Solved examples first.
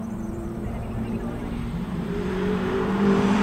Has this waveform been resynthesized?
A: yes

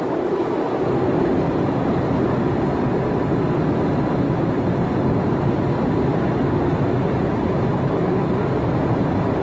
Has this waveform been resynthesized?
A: no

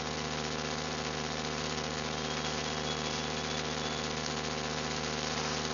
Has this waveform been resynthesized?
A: no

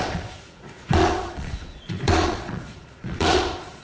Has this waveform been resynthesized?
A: yes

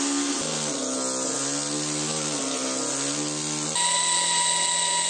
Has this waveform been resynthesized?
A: no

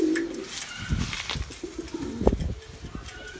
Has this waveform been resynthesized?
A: no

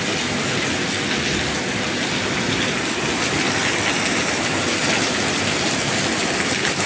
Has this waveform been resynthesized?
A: no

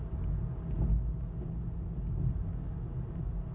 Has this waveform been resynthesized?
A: no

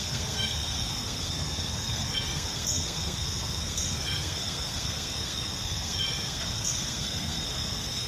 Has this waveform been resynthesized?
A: yes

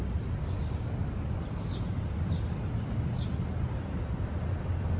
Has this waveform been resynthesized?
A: no